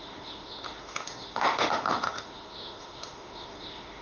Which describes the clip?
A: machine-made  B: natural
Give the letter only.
A